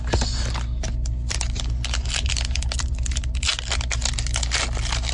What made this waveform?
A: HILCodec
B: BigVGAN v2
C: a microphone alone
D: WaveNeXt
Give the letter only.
C